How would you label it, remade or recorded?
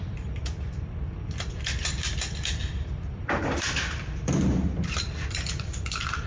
remade